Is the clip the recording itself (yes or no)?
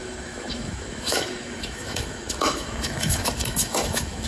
no